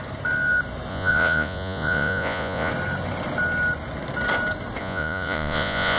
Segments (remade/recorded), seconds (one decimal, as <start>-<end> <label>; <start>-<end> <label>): 0.0-0.9 recorded; 0.9-2.7 remade; 2.7-4.8 recorded; 4.8-6.0 remade